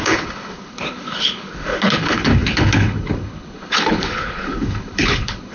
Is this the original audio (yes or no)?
no